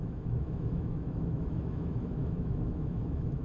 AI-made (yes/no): yes